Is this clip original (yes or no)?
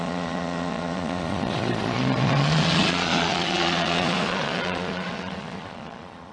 no